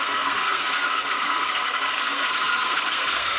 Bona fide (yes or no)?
no